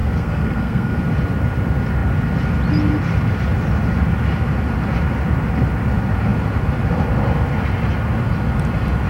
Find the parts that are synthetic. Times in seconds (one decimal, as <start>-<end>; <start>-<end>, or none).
0.0-1.0